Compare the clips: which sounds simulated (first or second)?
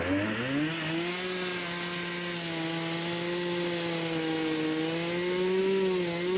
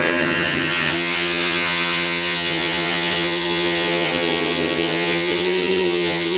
second